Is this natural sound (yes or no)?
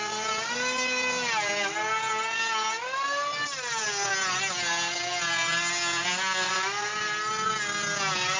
yes